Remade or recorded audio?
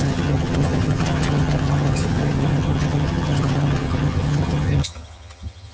remade